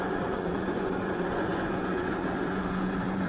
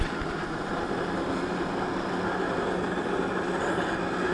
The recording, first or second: second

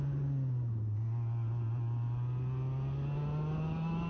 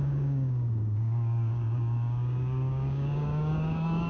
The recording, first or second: first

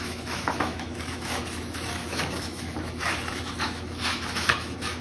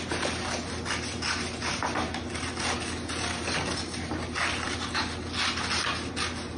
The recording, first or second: second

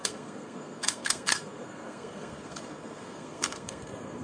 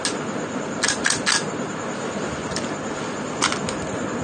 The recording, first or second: second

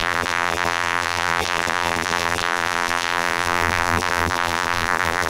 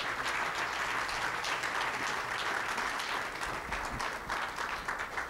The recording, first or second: second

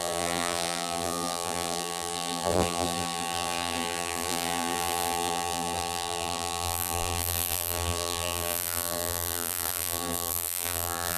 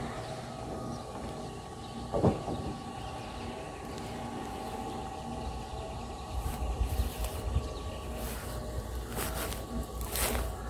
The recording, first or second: second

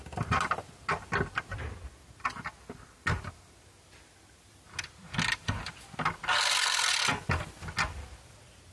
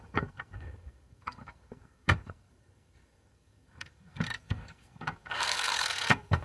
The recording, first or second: first